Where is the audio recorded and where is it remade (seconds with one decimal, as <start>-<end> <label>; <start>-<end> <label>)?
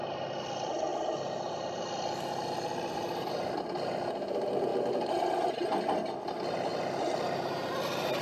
0.0-8.2 recorded